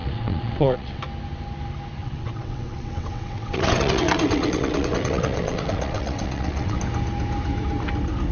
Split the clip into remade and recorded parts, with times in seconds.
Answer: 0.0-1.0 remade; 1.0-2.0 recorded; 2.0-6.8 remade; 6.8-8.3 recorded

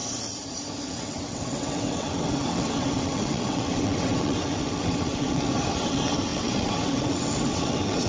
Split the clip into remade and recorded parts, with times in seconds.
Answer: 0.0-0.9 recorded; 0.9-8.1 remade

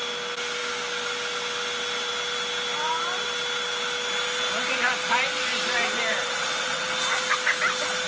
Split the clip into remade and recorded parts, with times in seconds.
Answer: 0.0-6.1 recorded; 6.1-6.8 remade; 6.8-8.1 recorded

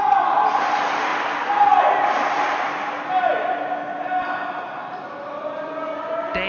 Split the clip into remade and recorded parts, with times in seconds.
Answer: 0.0-6.5 recorded

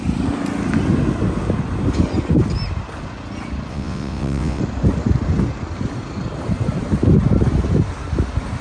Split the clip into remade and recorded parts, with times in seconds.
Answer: 0.0-3.7 recorded; 3.7-4.6 remade; 4.6-8.6 recorded